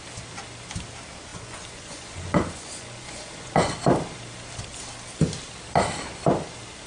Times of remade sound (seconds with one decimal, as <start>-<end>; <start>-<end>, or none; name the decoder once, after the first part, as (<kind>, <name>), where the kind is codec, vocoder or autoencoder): 1.3-3.7 (vocoder, Vocos)